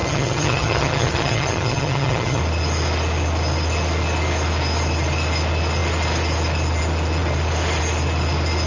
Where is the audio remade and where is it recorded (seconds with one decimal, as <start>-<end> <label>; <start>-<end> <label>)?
0.0-2.4 remade; 2.4-8.7 recorded